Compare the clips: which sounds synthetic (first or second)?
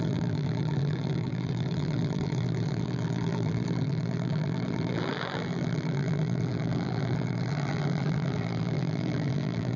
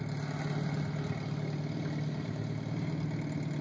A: first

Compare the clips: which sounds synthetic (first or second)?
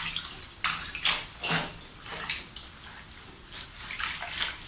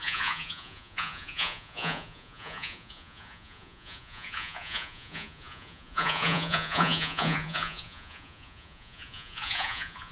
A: second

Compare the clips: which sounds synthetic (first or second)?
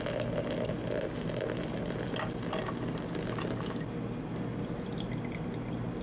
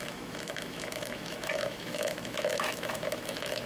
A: second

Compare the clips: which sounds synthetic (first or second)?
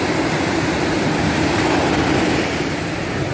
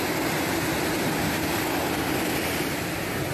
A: first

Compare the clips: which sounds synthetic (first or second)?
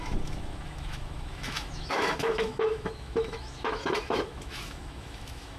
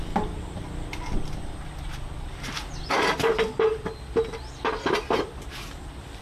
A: first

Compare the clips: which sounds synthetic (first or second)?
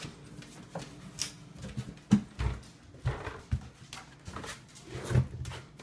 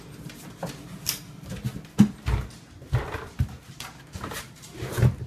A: second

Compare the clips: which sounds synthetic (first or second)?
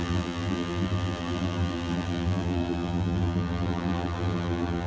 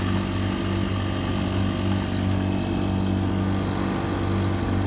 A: first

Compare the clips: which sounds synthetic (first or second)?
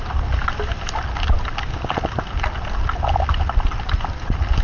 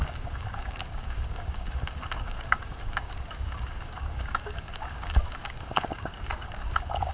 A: second